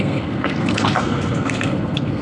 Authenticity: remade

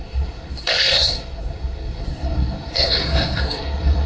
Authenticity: remade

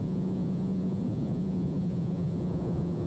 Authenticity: remade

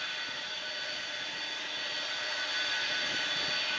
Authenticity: recorded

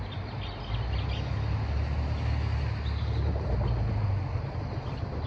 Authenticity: recorded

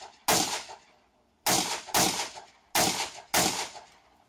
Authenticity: recorded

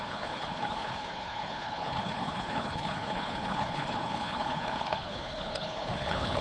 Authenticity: remade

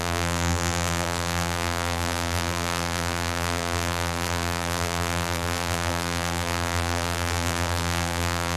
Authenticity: remade